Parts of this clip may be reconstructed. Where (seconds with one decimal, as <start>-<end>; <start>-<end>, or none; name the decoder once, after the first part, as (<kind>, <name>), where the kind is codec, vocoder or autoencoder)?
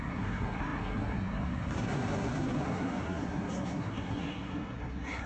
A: 0.0-5.3 (codec, SNAC)